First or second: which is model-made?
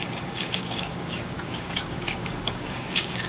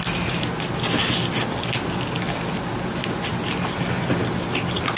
first